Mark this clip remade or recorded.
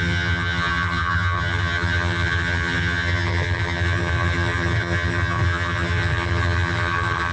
remade